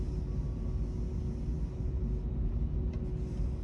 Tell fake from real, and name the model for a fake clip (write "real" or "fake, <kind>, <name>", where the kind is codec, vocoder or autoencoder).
real